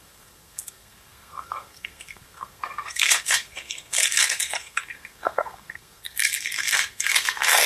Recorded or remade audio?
remade